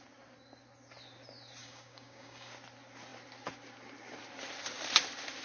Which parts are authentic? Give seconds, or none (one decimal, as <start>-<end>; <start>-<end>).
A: 0.0-1.6; 2.5-5.4